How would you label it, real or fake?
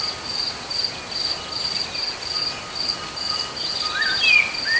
real